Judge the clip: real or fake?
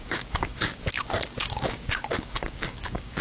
fake